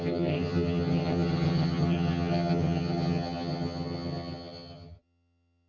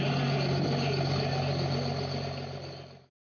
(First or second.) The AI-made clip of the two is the first